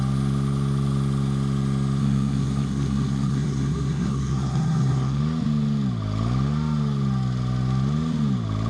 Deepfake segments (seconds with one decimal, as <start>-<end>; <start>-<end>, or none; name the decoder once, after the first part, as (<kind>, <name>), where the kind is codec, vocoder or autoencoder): 2.0-5.2 (codec, SNAC)